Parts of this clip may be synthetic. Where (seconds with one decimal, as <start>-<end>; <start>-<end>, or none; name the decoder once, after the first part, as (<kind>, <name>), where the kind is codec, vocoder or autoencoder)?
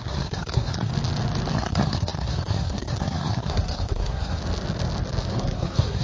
0.0-0.9 (codec, SNAC); 1.5-4.4; 5.3-6.0